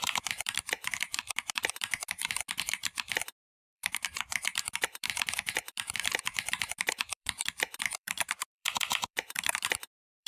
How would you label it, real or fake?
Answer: fake